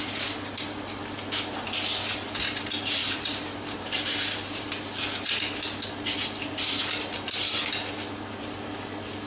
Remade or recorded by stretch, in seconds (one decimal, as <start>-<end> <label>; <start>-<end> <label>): 0.0-3.0 recorded; 3.0-4.7 remade; 4.7-9.3 recorded